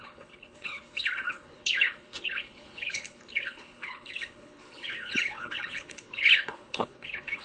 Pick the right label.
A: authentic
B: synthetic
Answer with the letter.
B